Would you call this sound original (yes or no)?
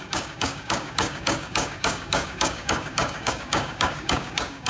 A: no